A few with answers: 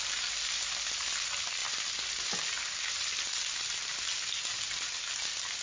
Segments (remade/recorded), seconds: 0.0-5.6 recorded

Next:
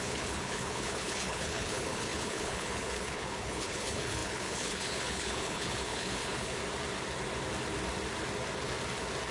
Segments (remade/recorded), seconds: 0.0-6.6 remade; 6.6-9.3 recorded

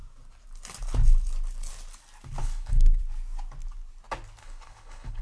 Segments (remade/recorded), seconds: 0.0-2.4 recorded; 2.4-3.0 remade; 3.0-4.4 recorded; 4.4-5.2 remade